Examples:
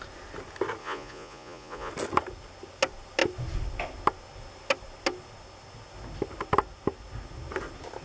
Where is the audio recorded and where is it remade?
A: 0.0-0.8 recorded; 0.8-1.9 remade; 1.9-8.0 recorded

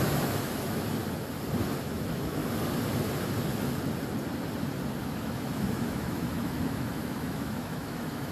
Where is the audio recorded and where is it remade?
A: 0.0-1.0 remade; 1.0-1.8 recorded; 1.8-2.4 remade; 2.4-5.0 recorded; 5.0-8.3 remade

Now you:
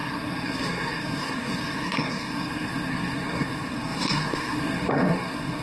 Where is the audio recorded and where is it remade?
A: 0.0-5.6 remade

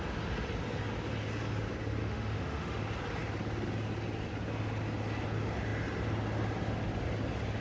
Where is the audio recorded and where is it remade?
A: 0.0-2.0 recorded; 2.0-2.8 remade; 2.8-7.6 recorded

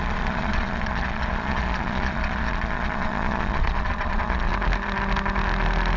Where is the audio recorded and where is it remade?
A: 0.0-4.5 remade; 4.5-6.0 recorded